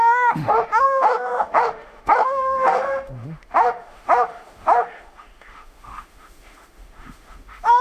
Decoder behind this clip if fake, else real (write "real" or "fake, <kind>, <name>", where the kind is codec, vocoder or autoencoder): fake, autoencoder, DAC-VAE